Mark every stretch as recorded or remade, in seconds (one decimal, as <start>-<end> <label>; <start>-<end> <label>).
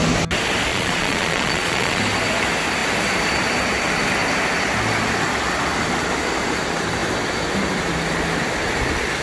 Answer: 0.0-0.7 recorded; 0.7-2.0 remade; 2.0-9.2 recorded